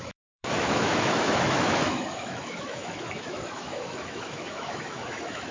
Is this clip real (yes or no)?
no